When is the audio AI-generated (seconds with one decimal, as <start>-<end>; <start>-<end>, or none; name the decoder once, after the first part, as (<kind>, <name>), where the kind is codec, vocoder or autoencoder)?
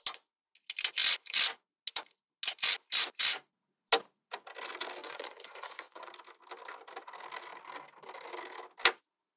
5.0-6.1 (vocoder, Vocos)